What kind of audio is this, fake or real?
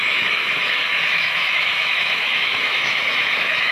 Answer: fake